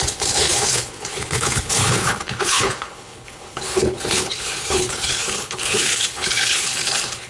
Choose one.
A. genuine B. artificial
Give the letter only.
B